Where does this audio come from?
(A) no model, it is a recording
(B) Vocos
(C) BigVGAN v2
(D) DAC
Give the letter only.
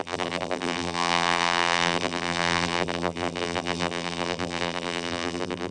C